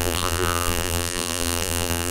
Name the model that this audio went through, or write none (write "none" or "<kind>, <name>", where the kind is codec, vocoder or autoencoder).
vocoder, BigVGAN v2